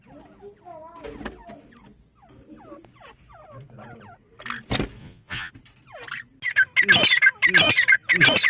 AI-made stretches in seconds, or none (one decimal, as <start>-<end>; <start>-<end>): 5.0-5.5